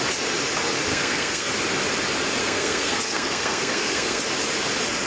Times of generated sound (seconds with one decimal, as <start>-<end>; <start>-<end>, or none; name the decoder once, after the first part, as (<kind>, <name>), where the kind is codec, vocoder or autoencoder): 0.9-1.5 (codec, SNAC); 2.4-4.2